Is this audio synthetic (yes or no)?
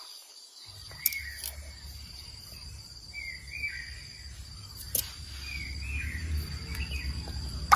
no